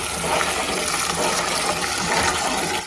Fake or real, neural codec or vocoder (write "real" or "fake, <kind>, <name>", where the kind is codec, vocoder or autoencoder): real